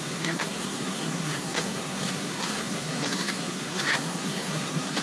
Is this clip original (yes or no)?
no